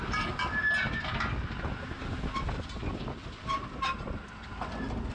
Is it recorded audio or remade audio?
recorded